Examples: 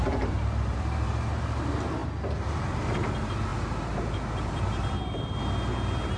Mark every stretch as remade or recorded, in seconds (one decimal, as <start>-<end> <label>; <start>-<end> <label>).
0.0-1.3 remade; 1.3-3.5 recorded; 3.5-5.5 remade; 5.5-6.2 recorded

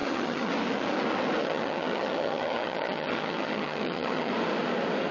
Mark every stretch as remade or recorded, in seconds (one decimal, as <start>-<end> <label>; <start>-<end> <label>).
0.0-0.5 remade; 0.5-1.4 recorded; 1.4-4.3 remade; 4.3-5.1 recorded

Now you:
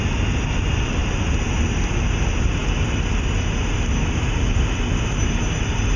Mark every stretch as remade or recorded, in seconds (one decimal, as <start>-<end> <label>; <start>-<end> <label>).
0.0-6.0 recorded